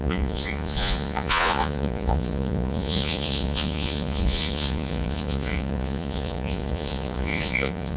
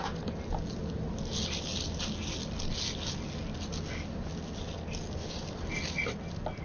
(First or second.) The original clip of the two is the second